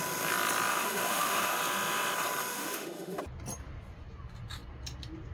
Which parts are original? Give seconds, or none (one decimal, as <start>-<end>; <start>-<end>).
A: 0.0-0.7; 1.6-2.5; 3.2-5.3